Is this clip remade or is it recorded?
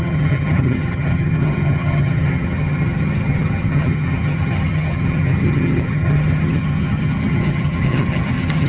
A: remade